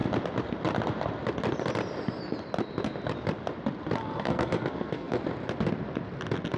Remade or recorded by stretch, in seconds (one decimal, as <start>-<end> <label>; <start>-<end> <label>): 0.0-4.0 recorded; 4.0-5.2 remade; 5.2-6.6 recorded